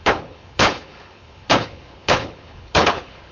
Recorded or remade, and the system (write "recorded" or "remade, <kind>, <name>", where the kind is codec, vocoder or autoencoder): remade, codec, HILCodec